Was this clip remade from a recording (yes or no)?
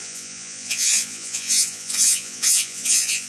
yes